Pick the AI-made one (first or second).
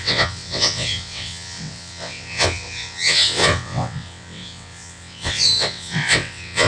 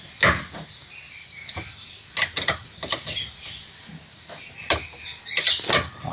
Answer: first